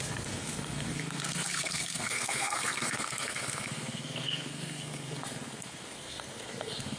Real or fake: fake